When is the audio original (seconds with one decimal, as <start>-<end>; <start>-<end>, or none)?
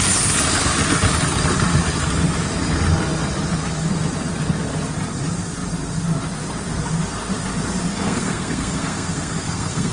0.0-7.9